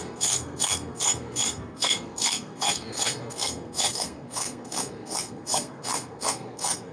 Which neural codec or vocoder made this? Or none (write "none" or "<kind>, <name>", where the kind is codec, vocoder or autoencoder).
codec, SNAC